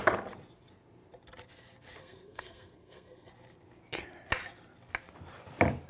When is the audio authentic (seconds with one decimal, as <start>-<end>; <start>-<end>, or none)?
0.0-2.0; 3.3-5.9